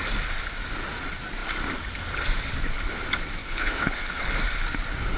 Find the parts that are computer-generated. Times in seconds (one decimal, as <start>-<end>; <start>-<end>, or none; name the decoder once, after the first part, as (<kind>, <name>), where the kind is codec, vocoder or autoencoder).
3.4-4.3 (codec, HILCodec)